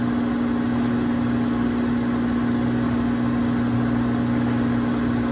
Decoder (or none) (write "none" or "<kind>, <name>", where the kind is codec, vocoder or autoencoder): none